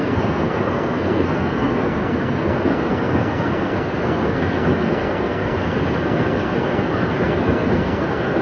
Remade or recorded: remade